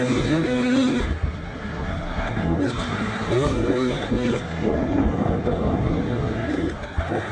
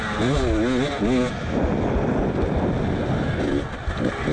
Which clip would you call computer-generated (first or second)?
first